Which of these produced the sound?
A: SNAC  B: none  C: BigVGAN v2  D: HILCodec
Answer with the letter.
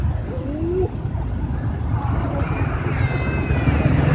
B